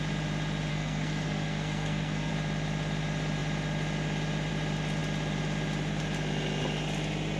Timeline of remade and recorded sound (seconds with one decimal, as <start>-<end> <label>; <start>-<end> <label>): 0.0-0.7 recorded; 0.7-2.3 remade; 2.3-7.4 recorded